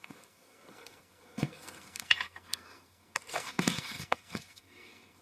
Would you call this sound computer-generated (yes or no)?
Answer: yes